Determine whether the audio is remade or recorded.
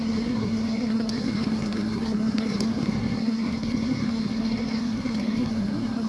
remade